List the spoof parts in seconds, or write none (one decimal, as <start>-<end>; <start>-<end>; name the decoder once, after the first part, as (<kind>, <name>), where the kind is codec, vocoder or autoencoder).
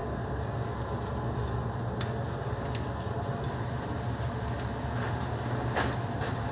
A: none